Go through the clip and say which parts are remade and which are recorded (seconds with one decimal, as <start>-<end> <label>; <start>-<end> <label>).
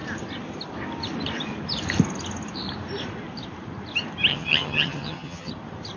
0.0-4.3 recorded; 4.3-5.5 remade; 5.5-6.0 recorded